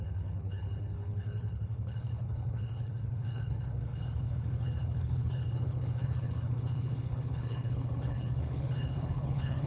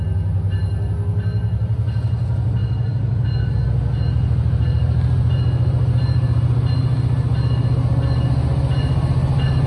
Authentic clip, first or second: second